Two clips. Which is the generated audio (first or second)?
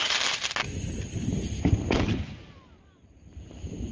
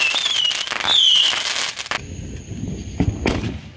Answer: first